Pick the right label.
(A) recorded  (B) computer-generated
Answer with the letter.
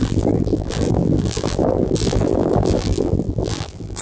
B